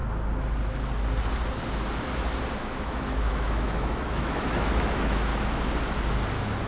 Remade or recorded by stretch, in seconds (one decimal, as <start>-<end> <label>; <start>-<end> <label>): 0.0-2.6 recorded; 2.6-5.3 remade; 5.3-6.7 recorded